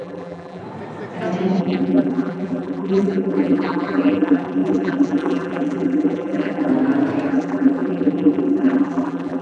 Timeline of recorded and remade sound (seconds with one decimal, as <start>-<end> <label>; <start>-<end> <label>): 0.0-0.6 remade; 0.6-1.6 recorded; 1.6-6.7 remade; 6.7-7.3 recorded; 7.3-9.4 remade